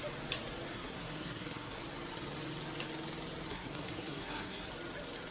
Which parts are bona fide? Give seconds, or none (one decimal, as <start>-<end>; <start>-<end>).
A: 0.0-0.7; 1.8-3.5; 4.7-5.3